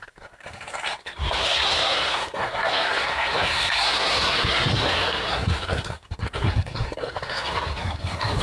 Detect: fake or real fake